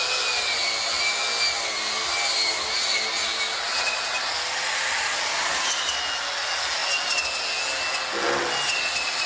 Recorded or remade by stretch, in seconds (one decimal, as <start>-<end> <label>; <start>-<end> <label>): 0.0-9.3 recorded